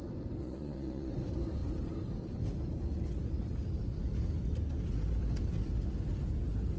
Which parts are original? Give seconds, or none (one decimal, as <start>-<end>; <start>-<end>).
0.0-0.4; 1.1-6.8